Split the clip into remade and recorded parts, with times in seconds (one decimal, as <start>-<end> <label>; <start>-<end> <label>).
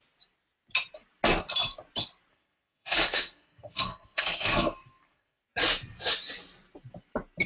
0.0-2.3 recorded; 2.3-5.4 remade; 5.4-7.5 recorded